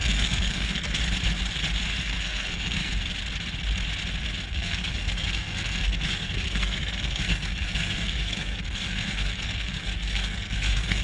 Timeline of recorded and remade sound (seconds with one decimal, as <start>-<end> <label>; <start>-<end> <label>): 0.0-1.0 remade; 1.0-2.0 recorded; 2.0-3.1 remade; 3.1-4.5 recorded; 4.5-11.0 remade